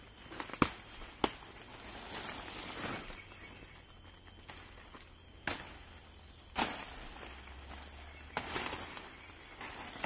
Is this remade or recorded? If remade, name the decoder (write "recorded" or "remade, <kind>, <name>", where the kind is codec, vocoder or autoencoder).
recorded